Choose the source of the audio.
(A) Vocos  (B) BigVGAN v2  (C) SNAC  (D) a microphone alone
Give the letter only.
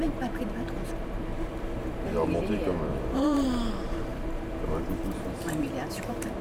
B